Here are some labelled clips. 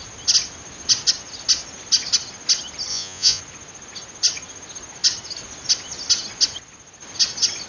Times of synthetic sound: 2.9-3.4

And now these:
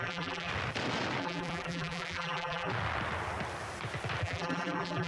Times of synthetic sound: 0.0-0.5; 1.2-2.7; 4.2-5.1

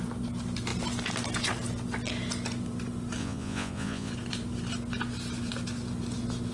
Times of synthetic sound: 3.2-4.1